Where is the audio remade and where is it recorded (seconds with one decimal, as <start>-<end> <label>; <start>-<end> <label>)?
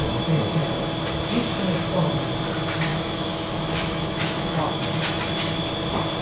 0.0-2.9 recorded; 2.9-4.7 remade; 4.7-6.2 recorded